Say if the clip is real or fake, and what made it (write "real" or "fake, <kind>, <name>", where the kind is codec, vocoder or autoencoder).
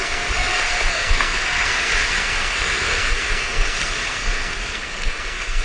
fake, codec, SNAC